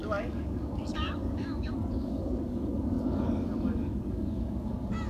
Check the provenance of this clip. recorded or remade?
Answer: remade